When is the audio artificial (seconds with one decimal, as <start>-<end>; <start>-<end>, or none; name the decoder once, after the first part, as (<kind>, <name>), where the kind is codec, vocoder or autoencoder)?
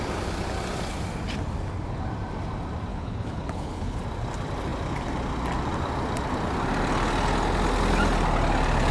2.9-4.0 (codec, HILCodec)